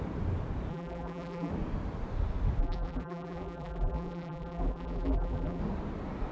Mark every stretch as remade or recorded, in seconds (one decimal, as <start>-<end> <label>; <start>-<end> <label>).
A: 0.0-0.7 recorded; 0.7-1.5 remade; 1.5-2.6 recorded; 2.6-5.6 remade; 5.6-6.3 recorded